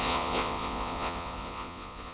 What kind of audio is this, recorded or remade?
remade